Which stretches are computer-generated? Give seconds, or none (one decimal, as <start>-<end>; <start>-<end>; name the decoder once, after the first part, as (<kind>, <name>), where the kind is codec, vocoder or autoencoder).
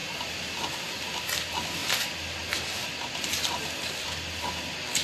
none